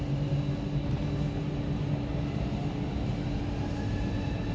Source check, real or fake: real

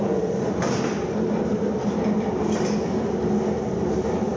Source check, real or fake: real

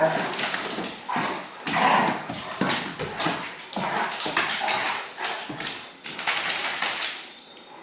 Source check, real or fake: real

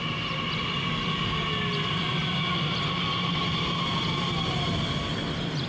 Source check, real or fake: real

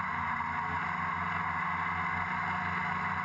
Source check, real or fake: real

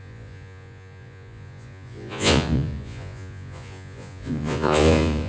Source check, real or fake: fake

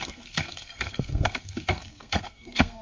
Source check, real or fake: fake